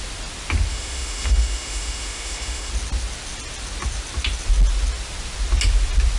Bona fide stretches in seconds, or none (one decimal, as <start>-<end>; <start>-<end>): 0.0-0.7; 2.7-6.2